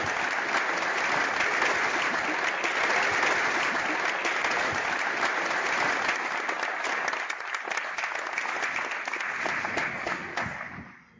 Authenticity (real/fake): real